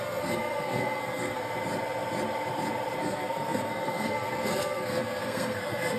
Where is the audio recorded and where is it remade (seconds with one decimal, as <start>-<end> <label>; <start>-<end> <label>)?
0.0-1.4 remade; 1.4-3.0 recorded; 3.0-6.0 remade